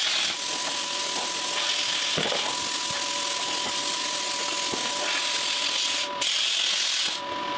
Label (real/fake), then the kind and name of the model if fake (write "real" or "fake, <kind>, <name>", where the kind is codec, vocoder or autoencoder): real